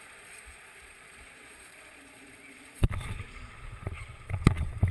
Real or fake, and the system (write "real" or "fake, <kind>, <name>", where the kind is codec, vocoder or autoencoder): fake, vocoder, Vocos